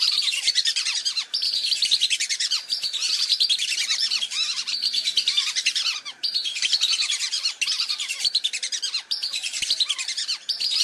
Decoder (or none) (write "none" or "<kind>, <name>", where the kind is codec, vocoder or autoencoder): vocoder, BigVGAN v2